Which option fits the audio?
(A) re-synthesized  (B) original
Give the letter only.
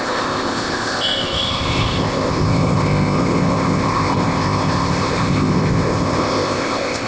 A